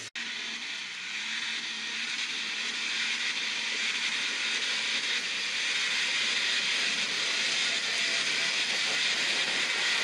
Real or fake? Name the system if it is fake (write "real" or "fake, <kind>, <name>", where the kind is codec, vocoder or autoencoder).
real